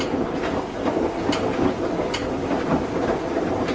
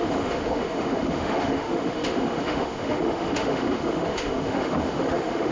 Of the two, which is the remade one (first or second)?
second